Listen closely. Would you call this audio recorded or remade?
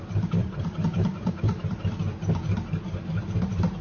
recorded